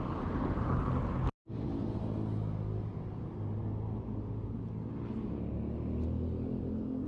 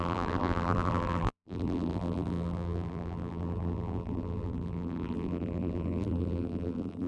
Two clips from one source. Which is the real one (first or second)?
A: first